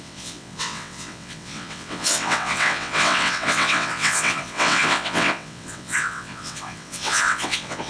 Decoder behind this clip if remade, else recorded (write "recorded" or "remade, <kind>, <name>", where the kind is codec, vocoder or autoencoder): remade, vocoder, WaveNeXt